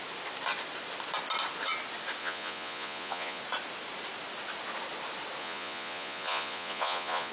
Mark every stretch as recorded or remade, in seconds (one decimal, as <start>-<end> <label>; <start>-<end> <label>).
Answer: 0.0-2.2 recorded; 2.2-3.4 remade; 3.4-5.4 recorded; 5.4-7.3 remade